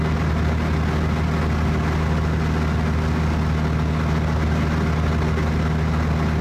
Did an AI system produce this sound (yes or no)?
no